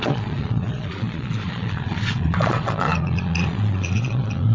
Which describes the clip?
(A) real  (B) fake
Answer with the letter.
B